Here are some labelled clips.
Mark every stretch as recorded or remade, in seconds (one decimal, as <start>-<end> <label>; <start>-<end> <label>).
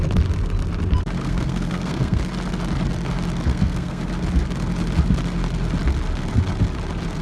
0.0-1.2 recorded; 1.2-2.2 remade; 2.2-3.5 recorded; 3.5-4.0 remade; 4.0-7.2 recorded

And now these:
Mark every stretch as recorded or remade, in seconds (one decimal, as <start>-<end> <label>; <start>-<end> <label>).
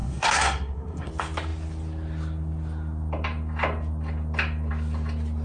0.0-1.1 remade; 1.1-5.4 recorded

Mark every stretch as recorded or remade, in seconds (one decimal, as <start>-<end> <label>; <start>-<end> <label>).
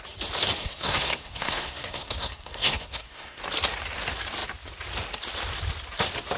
0.0-0.6 recorded; 0.6-3.4 remade; 3.4-6.4 recorded